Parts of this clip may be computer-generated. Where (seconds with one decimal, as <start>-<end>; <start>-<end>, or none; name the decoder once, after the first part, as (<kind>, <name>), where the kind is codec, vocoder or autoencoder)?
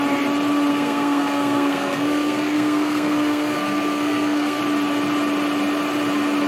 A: 0.7-4.6 (codec, SNAC)